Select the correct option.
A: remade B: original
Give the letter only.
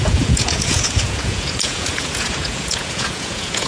A